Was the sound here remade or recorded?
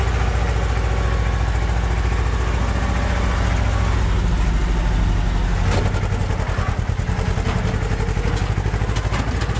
recorded